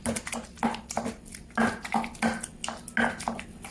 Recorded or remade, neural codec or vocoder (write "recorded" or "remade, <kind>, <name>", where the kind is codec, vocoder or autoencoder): recorded